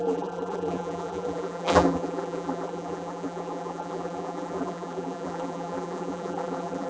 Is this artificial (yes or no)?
yes